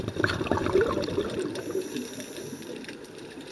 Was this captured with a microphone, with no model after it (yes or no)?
no